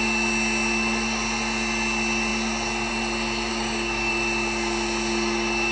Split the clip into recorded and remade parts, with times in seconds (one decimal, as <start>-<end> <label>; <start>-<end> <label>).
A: 0.0-3.5 recorded; 3.5-4.1 remade; 4.1-5.7 recorded